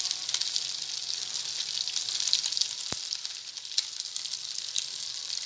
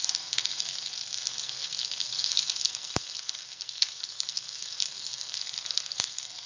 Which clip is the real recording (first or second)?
first